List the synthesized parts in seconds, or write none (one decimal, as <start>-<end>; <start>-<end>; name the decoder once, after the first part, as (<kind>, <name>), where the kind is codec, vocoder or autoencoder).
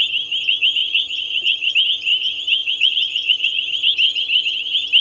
0.8-1.7 (vocoder, Vocos); 2.6-3.6